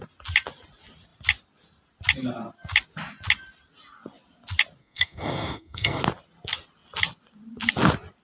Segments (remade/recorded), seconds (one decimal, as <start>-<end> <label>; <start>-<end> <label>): 0.0-4.8 recorded; 4.8-6.0 remade; 6.0-8.2 recorded